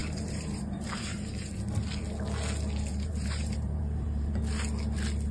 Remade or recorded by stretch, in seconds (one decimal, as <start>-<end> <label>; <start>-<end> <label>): 0.0-1.5 remade; 1.5-2.9 recorded; 2.9-4.3 remade; 4.3-5.3 recorded